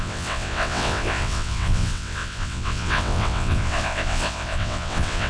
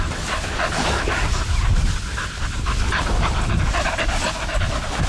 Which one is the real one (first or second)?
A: second